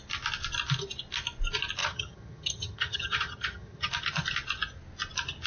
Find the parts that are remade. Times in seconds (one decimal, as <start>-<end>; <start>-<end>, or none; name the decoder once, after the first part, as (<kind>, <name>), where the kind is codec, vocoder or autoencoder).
1.8-3.9 (vocoder, HiFi-GAN)